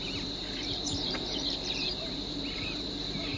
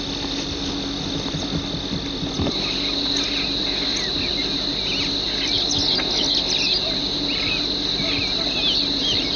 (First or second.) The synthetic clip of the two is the first